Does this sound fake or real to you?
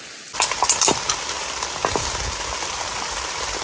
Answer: real